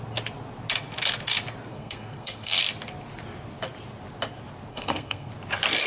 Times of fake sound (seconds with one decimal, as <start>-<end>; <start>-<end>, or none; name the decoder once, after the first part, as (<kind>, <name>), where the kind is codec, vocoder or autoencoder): 1.7-2.6 (codec, SNAC); 4.7-5.3